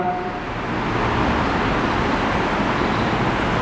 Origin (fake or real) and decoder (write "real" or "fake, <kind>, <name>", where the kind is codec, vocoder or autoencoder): real